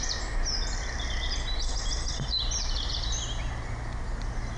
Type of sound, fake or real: real